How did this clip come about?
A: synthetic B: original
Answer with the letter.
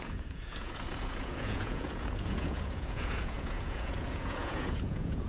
A